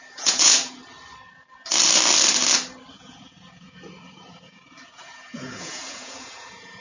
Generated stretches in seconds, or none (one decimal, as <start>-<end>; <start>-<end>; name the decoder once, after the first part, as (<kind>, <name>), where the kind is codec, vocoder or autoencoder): 0.0-0.8 (vocoder, Vocos); 2.9-6.8

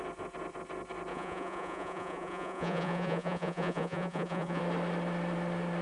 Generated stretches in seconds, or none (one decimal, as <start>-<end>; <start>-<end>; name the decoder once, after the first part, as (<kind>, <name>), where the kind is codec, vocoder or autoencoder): 1.1-4.6 (vocoder, Vocos)

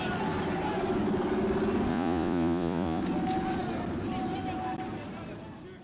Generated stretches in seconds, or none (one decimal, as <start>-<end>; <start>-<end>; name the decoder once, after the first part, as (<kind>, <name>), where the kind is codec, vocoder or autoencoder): 1.9-3.0 (vocoder, Vocos)

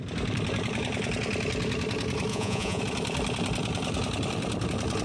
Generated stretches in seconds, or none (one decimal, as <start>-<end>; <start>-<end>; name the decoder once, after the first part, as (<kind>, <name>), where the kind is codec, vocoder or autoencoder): 2.3-2.8 (vocoder, Vocos)

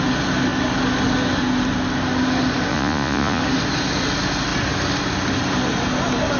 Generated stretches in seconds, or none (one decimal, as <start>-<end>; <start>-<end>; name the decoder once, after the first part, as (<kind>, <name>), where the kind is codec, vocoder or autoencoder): 2.7-3.4 (vocoder, Vocos)

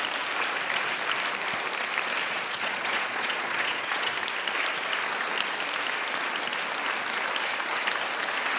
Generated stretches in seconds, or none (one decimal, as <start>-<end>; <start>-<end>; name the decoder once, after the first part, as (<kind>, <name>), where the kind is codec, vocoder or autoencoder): 2.2-4.1 (vocoder, Vocos)

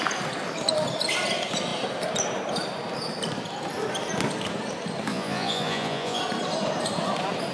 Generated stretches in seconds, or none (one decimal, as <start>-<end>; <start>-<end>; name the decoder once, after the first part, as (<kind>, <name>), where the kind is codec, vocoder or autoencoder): 5.1-6.2 (vocoder, Vocos)